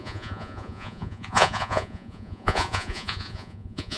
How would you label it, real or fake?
fake